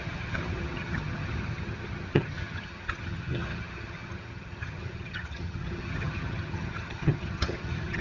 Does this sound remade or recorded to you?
remade